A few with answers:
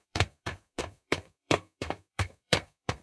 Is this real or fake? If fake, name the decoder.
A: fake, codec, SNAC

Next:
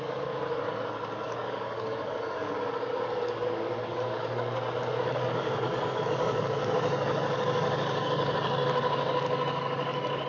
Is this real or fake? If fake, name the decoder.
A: fake, codec, DAC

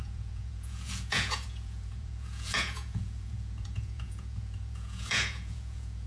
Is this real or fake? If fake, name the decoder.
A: fake, vocoder, Vocos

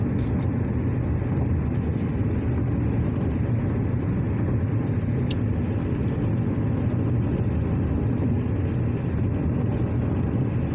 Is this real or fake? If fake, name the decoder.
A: real